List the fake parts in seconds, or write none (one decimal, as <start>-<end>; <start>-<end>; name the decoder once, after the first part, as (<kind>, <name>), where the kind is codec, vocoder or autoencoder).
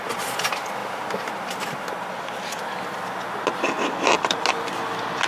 none